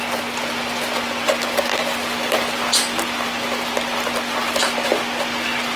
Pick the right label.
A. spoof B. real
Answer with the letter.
B